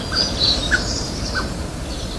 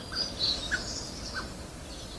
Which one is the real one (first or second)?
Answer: second